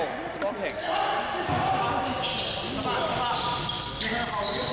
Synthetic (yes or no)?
no